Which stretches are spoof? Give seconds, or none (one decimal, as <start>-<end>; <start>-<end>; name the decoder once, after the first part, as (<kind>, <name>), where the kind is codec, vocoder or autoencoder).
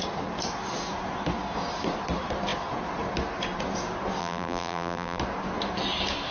4.2-5.2 (vocoder, BigVGAN v2)